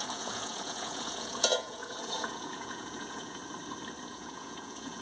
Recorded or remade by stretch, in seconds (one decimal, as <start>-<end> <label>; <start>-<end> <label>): 0.0-3.4 remade; 3.4-4.0 recorded; 4.0-5.0 remade